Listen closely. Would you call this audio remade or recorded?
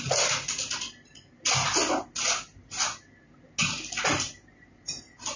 recorded